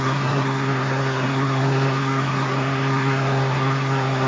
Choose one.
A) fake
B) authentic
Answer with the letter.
A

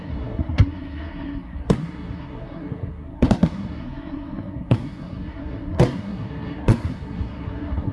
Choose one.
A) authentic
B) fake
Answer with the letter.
B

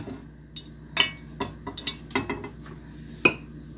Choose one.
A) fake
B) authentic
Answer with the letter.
B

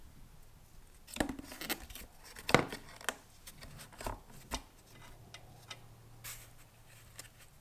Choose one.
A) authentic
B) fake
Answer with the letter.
A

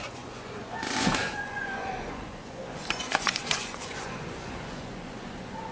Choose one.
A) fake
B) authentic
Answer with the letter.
A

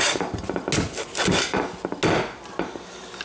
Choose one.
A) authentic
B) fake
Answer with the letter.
A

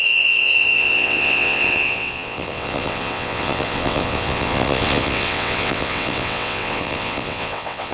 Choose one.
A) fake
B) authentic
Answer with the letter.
A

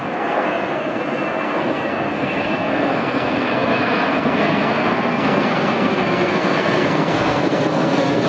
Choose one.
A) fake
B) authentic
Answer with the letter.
A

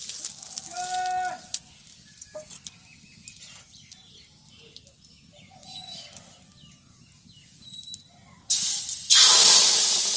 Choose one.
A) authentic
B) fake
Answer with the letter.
A